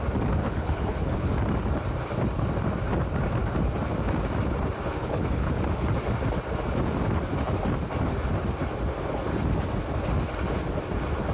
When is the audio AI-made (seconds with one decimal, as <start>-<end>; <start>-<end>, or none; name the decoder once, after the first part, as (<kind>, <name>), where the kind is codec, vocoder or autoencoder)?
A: 0.4-1.3 (codec, HILCodec); 5.0-5.6